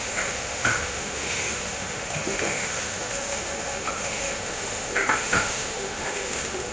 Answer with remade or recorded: remade